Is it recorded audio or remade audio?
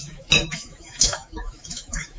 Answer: remade